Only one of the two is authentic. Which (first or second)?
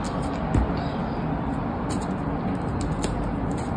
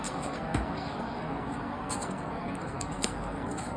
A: first